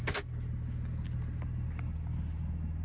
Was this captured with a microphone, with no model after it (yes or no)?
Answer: yes